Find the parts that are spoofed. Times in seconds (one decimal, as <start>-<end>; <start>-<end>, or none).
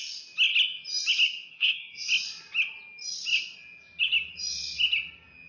1.5-2.1